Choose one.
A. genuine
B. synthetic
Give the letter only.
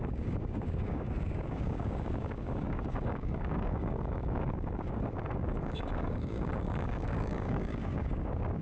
B